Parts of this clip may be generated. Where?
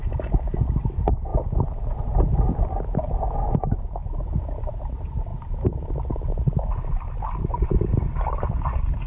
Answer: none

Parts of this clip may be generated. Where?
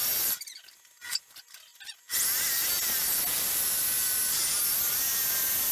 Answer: none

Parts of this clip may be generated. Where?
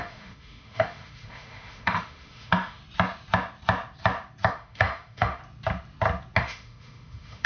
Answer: 0.0-2.8 (autoencoder, DAC-VAE); 4.5-5.4; 6.4-7.5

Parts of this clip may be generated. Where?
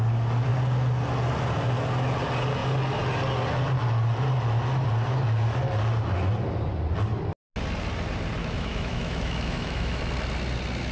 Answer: 8.4-10.0 (autoencoder, DAC-VAE)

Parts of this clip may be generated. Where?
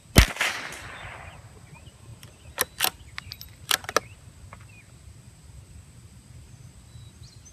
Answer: none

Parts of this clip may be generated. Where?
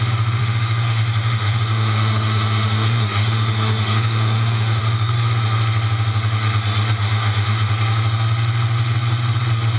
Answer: 0.4-4.8 (autoencoder, DAC-VAE); 7.0-7.7